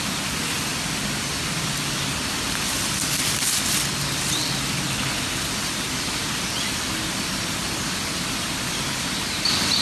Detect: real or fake real